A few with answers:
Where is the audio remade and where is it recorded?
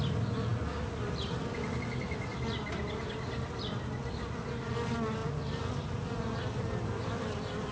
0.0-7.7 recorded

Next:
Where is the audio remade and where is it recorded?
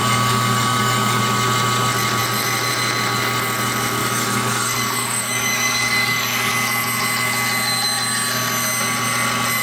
0.0-1.2 remade; 1.2-4.0 recorded; 4.0-6.5 remade; 6.5-9.6 recorded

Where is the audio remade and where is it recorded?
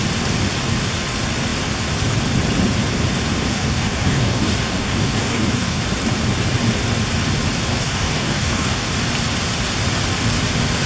0.0-3.5 recorded; 3.5-5.8 remade; 5.8-7.7 recorded; 7.7-8.9 remade; 8.9-10.9 recorded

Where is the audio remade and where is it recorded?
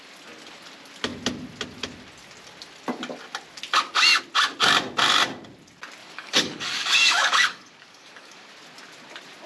0.0-6.0 recorded; 6.0-8.5 remade; 8.5-9.5 recorded